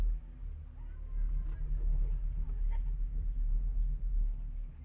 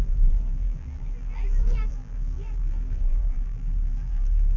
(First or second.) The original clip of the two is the first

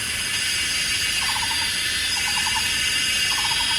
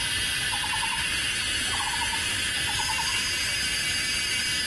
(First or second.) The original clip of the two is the second